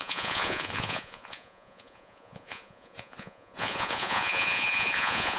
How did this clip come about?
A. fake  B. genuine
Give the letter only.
A